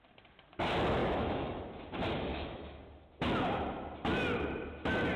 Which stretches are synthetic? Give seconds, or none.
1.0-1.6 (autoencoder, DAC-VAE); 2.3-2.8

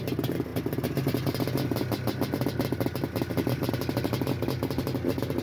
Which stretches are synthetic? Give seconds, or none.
none

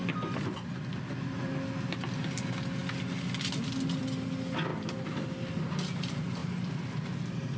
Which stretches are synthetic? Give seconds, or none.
none

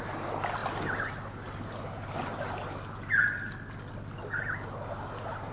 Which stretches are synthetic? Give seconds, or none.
none

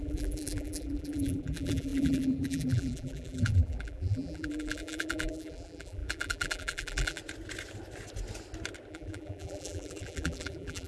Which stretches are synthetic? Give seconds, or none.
0.0-7.2 (vocoder, BigVGAN v2); 8.9-10.9

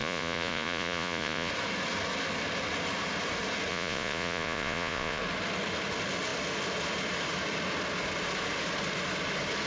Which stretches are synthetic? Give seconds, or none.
0.0-1.5 (vocoder, Vocos); 3.7-5.2